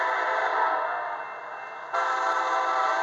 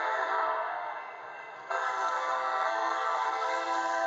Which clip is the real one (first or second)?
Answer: first